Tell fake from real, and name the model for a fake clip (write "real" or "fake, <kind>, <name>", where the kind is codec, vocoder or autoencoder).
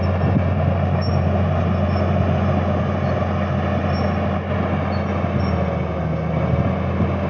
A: real